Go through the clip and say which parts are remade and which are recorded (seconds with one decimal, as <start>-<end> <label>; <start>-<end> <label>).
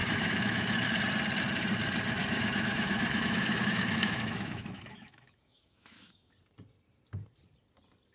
0.0-0.9 remade; 0.9-2.2 recorded; 2.2-6.3 remade; 6.3-8.1 recorded